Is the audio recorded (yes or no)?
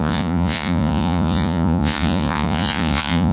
no